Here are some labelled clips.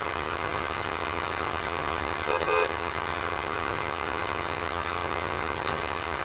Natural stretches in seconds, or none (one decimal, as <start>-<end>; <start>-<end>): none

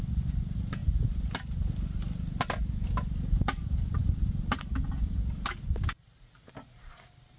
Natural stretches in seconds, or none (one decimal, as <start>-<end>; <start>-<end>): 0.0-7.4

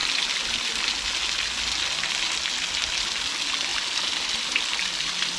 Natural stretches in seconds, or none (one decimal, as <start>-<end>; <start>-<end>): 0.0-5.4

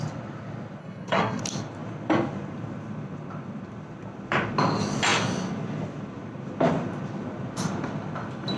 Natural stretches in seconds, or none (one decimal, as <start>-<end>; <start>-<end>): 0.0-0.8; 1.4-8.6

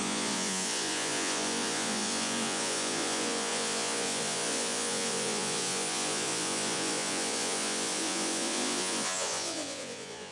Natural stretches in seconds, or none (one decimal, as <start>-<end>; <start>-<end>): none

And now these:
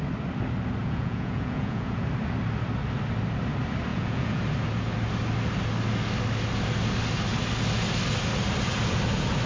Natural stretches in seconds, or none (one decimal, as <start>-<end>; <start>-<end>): 0.0-0.8; 2.1-3.9; 4.4-9.5

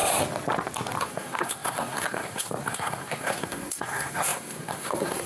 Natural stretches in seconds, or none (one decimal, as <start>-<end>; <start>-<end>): 0.0-1.0

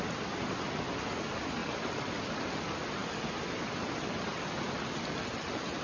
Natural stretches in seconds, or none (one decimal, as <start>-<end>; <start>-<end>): 0.0-1.6; 2.4-5.8